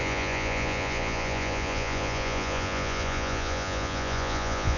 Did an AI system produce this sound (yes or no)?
yes